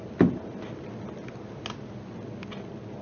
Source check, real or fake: real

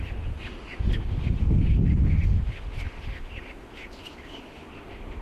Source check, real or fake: fake